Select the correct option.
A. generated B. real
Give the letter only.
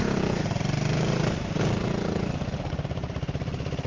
B